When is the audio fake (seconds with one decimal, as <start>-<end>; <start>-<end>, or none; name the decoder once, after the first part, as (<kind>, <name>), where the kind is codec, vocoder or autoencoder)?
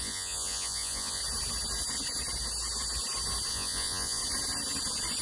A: 0.0-1.2 (vocoder, Vocos); 3.5-4.2